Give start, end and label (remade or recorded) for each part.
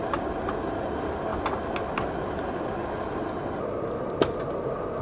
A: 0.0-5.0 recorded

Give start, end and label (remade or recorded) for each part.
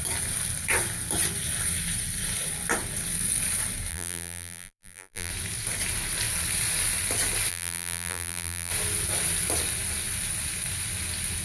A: 0.0-3.9 recorded; 3.9-5.3 remade; 5.3-7.5 recorded; 7.5-8.7 remade; 8.7-11.4 recorded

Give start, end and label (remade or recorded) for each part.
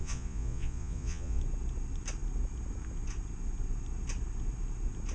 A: 0.0-1.4 remade; 1.4-5.1 recorded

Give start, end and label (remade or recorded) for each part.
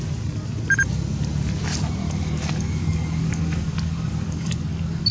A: 0.0-2.0 recorded; 2.0-5.1 remade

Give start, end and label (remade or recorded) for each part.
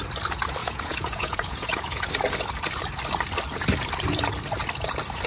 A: 0.0-0.6 recorded; 0.6-2.1 remade; 2.1-5.3 recorded